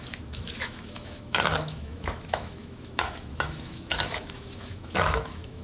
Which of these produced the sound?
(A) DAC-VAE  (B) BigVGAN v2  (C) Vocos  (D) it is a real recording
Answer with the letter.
A